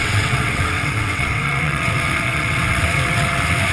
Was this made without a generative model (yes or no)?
no